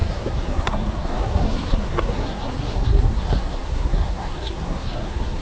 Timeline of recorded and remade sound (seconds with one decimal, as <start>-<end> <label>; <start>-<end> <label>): 0.0-5.4 remade